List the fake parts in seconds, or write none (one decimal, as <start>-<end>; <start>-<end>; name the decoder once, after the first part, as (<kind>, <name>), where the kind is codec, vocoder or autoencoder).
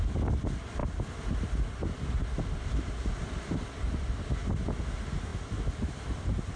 none